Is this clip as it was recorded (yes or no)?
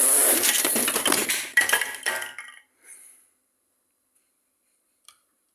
no